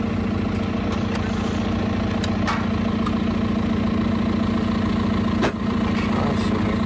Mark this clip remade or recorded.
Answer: recorded